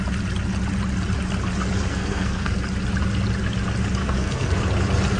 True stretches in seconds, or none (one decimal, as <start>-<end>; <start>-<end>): 0.0-1.9; 2.5-4.0; 4.6-5.2